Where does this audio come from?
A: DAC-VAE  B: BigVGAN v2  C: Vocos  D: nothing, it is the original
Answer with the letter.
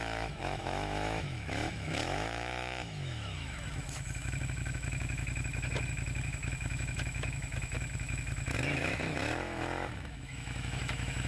A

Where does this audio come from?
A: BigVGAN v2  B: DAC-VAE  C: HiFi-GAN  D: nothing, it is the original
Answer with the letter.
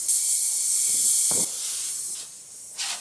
D